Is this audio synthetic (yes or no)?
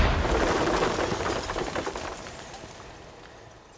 no